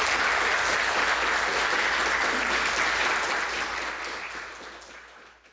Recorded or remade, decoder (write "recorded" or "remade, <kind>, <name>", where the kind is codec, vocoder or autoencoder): recorded